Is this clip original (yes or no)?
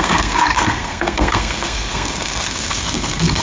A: no